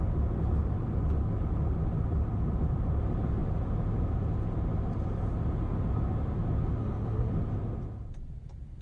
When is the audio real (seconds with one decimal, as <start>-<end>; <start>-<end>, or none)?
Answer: 0.0-6.8; 7.3-8.8